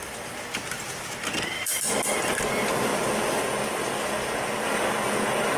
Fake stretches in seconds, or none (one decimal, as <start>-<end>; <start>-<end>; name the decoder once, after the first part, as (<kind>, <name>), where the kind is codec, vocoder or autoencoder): 0.0-2.4 (vocoder, BigVGAN v2)